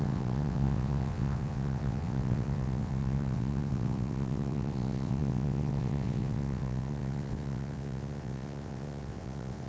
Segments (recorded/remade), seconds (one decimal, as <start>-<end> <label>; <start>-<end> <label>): 0.0-9.7 remade

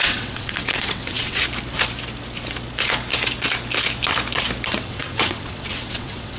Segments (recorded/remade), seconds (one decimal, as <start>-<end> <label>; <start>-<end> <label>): 0.0-1.4 remade; 1.4-4.7 recorded; 4.7-6.4 remade